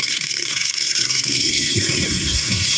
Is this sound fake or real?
fake